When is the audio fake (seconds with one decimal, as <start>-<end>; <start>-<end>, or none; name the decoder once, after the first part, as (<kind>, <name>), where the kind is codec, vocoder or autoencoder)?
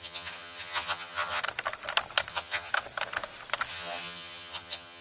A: 0.0-1.4 (vocoder, HiFi-GAN); 2.3-2.7; 3.7-5.0